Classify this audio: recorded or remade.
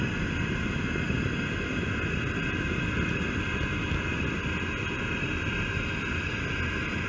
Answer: recorded